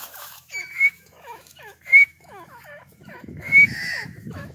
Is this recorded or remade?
remade